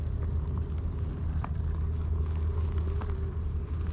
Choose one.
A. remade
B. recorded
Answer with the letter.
B